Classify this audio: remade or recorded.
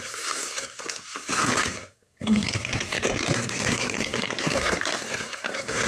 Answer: remade